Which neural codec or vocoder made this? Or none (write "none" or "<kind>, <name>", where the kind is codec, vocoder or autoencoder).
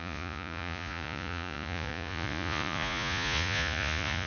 vocoder, Vocos